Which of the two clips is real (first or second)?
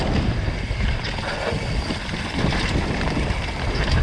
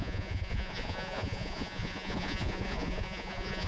first